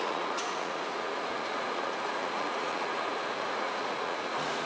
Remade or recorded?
remade